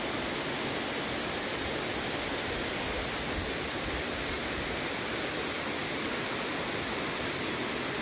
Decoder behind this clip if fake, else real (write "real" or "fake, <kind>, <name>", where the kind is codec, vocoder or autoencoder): real